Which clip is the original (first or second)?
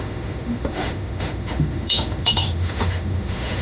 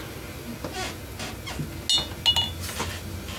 second